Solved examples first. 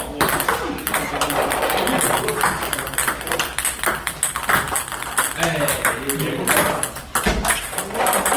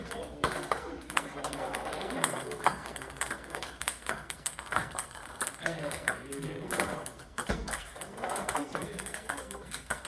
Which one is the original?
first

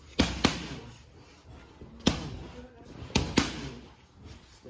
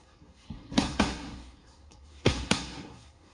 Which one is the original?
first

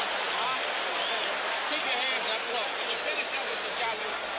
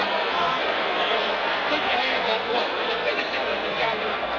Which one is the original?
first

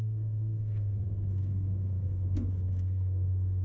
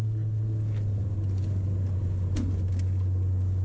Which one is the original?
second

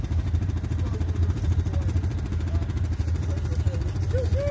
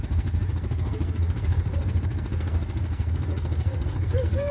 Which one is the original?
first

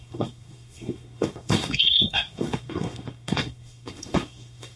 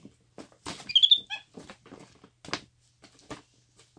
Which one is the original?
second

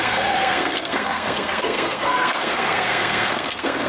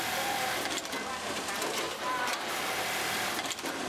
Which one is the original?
second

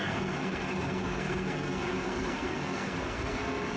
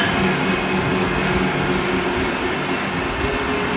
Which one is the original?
second